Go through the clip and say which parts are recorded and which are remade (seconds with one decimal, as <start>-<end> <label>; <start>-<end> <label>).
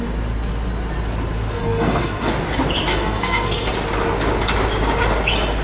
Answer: 0.0-1.6 recorded; 1.6-2.3 remade; 2.3-2.9 recorded; 2.9-3.7 remade; 3.7-5.6 recorded